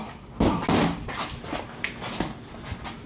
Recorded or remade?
recorded